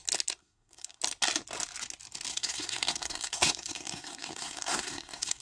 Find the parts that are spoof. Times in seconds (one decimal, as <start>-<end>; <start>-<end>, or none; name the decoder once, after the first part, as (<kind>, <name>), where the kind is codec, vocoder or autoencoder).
0.4-1.0 (codec, SNAC); 2.3-5.4